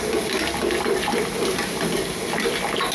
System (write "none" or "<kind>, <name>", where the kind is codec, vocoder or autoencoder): none